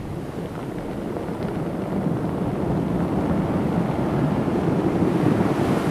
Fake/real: real